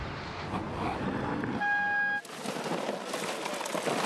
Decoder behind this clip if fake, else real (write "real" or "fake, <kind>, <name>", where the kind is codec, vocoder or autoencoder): real